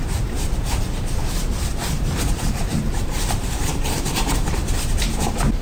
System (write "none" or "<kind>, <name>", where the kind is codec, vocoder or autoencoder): vocoder, BigVGAN v2